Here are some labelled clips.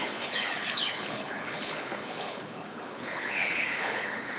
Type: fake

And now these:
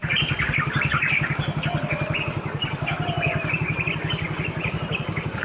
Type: real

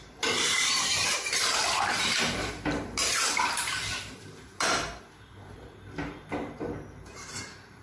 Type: fake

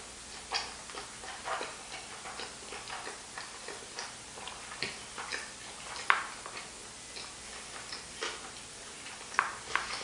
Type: real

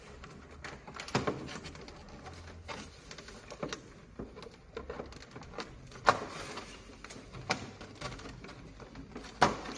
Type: real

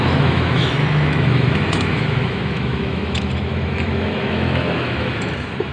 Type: fake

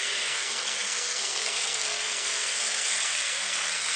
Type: fake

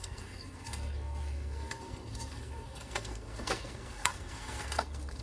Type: fake